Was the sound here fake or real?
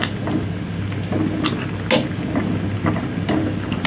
real